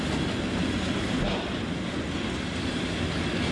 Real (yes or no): yes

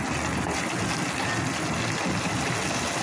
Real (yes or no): yes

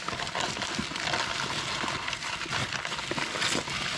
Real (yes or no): yes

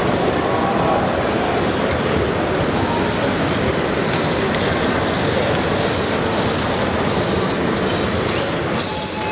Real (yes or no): yes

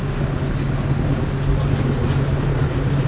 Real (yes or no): yes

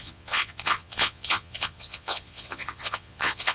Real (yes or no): no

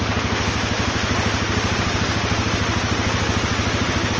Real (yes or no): yes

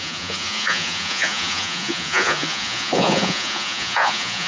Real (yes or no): no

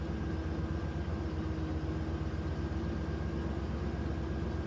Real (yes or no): yes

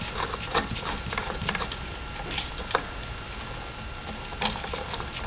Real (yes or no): yes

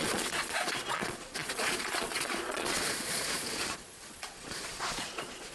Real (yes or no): no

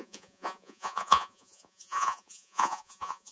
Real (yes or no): no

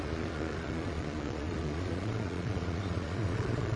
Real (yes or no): no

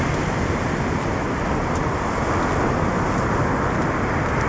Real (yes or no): yes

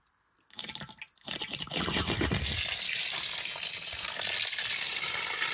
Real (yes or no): yes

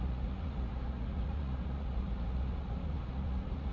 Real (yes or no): no